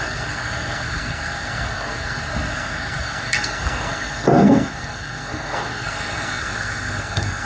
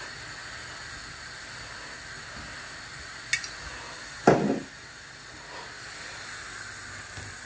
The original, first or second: second